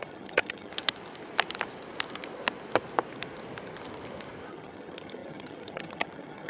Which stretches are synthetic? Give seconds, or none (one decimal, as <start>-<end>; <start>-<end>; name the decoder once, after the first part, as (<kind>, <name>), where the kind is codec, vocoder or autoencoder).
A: 0.0-0.7 (vocoder, HiFi-GAN); 4.5-6.5